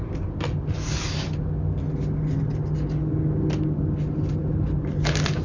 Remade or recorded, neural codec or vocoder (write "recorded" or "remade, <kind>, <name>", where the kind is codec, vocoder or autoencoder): recorded